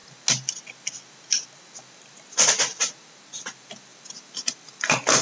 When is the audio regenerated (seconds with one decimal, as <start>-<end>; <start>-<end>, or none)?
none